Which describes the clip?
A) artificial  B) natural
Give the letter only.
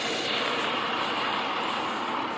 B